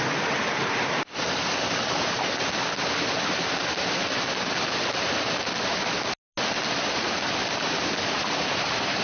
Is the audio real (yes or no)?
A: yes